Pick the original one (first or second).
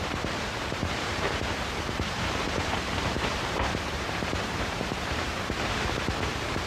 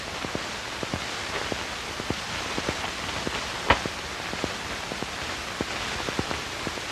second